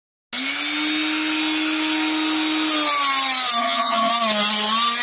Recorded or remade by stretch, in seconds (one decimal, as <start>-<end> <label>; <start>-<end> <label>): 0.0-3.6 recorded; 3.6-4.1 remade; 4.1-5.0 recorded

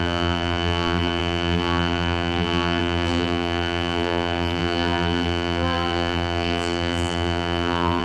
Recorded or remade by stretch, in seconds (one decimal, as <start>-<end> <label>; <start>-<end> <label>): 0.0-8.0 remade

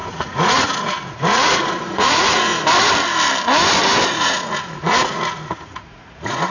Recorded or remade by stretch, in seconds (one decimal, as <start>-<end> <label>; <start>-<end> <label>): 0.0-2.5 remade; 2.5-4.2 recorded; 4.2-6.5 remade

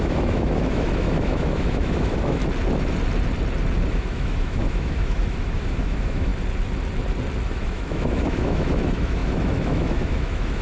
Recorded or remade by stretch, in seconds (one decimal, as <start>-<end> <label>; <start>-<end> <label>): 0.0-2.4 remade; 2.4-3.9 recorded; 3.9-6.3 remade; 6.3-7.5 recorded; 7.5-10.6 remade

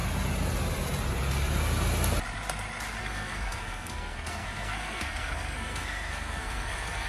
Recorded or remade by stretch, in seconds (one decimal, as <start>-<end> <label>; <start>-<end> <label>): 0.0-3.0 recorded; 3.0-7.1 remade

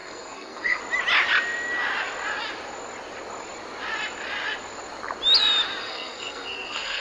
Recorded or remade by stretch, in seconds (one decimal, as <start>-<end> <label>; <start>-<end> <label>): 0.0-0.8 remade; 0.8-5.8 recorded; 5.8-7.0 remade

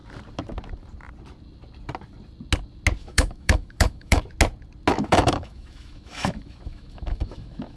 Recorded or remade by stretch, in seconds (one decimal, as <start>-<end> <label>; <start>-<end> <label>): 0.0-3.0 recorded; 3.0-4.2 remade; 4.2-4.9 recorded; 4.9-7.8 remade